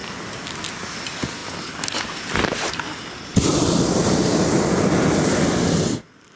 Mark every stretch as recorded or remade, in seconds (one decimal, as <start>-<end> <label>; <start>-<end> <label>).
0.0-0.6 remade; 0.6-3.5 recorded; 3.5-4.0 remade; 4.0-6.4 recorded